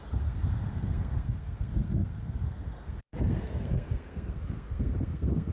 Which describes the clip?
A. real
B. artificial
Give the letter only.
B